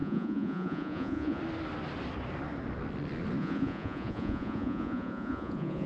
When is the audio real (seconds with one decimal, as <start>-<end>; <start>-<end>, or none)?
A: 1.4-3.4